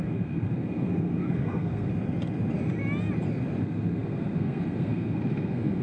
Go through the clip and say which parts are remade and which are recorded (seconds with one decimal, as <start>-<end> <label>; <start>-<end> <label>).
0.0-1.9 remade; 1.9-3.6 recorded; 3.6-5.8 remade